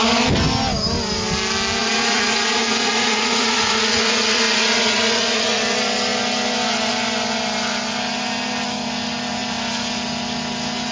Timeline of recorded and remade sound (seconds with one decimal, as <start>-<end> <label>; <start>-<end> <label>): 0.0-1.8 recorded; 1.8-5.6 remade; 5.6-10.9 recorded

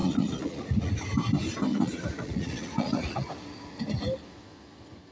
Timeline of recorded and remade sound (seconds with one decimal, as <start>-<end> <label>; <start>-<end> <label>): 0.0-0.9 remade; 0.9-1.7 recorded; 1.7-3.3 remade; 3.3-5.1 recorded

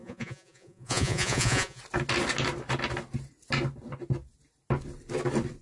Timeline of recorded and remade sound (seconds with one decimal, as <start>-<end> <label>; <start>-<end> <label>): 0.0-1.8 remade; 1.8-5.6 recorded